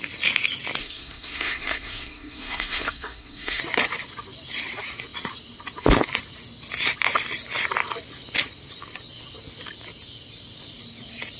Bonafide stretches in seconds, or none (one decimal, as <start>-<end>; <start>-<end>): 0.0-0.8; 3.6-11.4